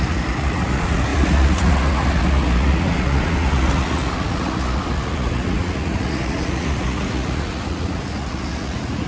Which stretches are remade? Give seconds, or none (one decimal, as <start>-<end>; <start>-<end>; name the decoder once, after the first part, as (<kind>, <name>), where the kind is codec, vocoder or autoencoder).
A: 0.0-9.1 (vocoder, Vocos)